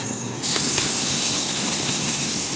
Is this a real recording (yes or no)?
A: no